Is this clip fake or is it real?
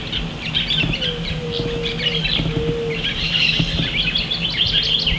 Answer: real